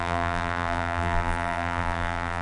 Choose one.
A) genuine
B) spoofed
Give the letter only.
B